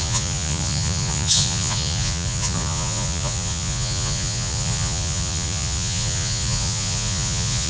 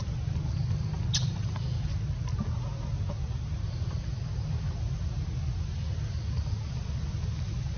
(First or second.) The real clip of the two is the second